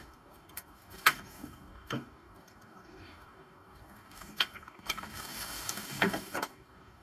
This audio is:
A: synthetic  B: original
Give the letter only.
A